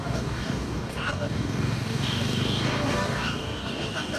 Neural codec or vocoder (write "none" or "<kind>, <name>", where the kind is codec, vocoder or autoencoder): codec, DAC